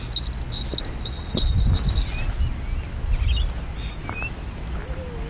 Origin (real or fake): real